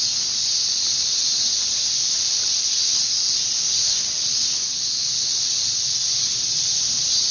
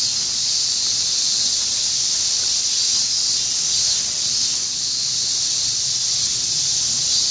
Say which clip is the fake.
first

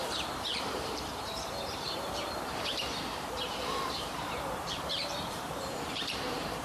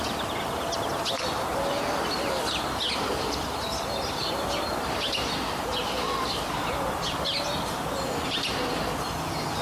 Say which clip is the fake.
first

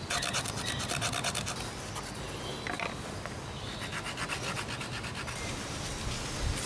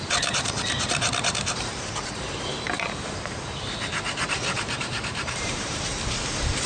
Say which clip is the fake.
second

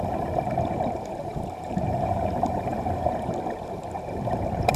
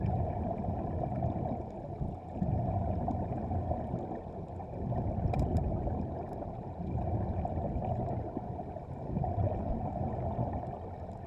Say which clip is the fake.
first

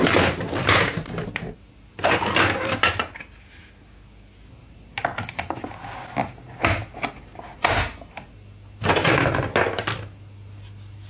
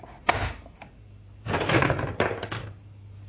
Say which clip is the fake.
second